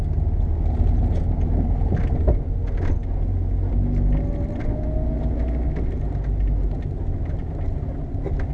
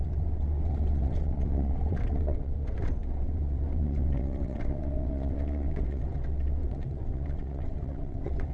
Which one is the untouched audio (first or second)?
first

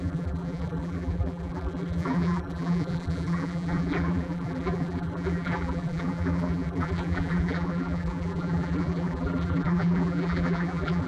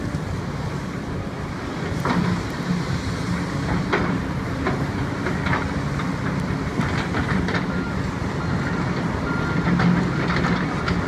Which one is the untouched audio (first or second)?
second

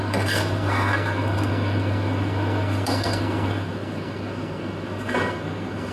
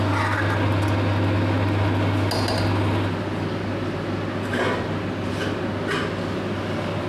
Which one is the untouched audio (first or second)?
second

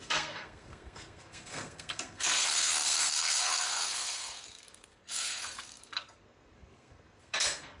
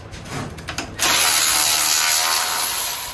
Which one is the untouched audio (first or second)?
second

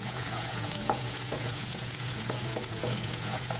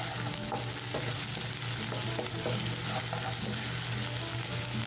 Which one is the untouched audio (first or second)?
second